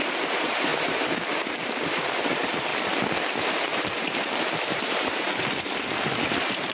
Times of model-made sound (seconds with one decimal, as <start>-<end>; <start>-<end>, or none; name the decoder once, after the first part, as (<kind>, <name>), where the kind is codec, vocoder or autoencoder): 0.0-2.7 (vocoder, BigVGAN v2); 3.4-5.3; 5.9-6.7